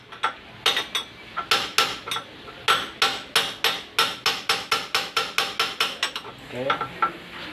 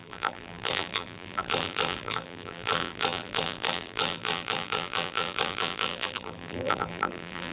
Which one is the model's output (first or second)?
second